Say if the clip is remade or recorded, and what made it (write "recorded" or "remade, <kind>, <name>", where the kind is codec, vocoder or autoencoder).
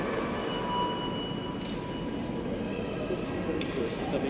recorded